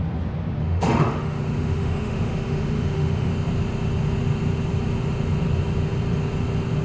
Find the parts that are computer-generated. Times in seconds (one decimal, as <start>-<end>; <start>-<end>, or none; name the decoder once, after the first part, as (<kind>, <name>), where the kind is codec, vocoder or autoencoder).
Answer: 0.6-3.3 (autoencoder, DAC-VAE)